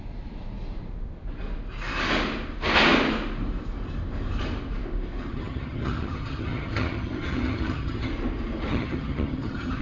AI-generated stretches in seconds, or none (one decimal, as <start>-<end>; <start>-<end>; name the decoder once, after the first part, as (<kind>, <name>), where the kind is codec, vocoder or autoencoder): 5.3-8.1 (vocoder, HiFi-GAN); 8.7-9.8